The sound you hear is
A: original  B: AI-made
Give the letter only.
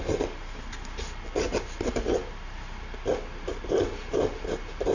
A